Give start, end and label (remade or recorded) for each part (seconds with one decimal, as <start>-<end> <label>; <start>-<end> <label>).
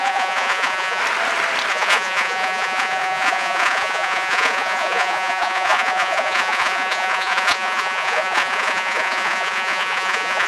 0.0-1.0 remade; 1.0-1.7 recorded; 1.7-10.5 remade